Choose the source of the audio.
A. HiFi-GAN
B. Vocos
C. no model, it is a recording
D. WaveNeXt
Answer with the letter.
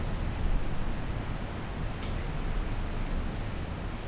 C